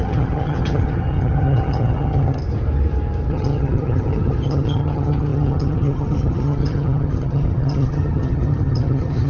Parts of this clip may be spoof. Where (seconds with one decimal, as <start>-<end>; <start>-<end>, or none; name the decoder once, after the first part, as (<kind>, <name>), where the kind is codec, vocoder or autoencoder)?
0.0-2.4 (vocoder, HiFi-GAN); 3.3-9.3